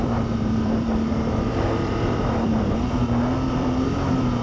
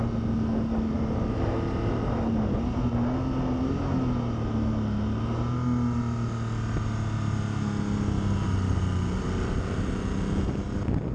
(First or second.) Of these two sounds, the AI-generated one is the first